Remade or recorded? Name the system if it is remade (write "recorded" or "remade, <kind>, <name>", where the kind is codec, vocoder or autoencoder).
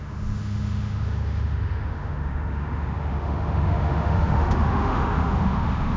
remade, autoencoder, DAC-VAE